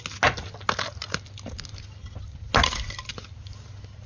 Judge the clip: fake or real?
real